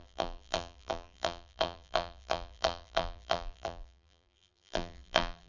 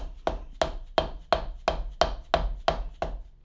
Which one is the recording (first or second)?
second